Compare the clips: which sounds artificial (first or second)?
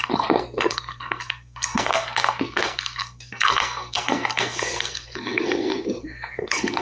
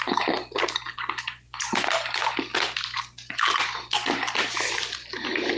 first